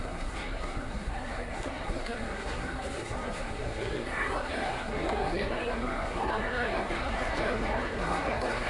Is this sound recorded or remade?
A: remade